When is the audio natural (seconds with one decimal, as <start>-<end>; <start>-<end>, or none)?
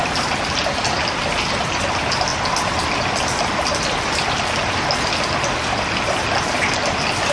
0.0-7.3